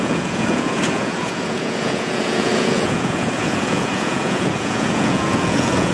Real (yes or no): no